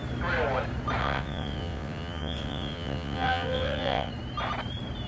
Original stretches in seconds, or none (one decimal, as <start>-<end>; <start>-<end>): 0.0-1.0; 4.1-5.1